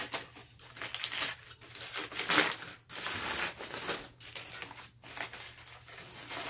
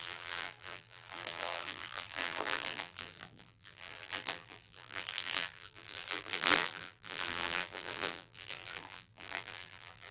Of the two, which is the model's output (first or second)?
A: second